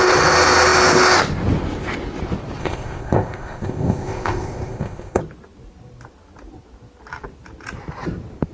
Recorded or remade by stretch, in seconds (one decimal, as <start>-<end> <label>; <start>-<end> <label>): 0.0-2.6 recorded; 2.6-5.2 remade; 5.2-8.5 recorded